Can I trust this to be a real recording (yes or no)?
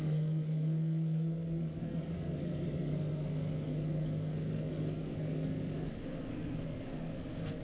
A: no